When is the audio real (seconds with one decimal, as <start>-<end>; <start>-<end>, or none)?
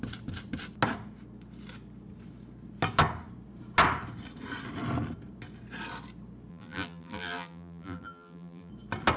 0.0-6.5; 8.7-9.2